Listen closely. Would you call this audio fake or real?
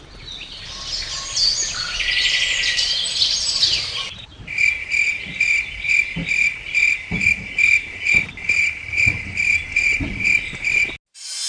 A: real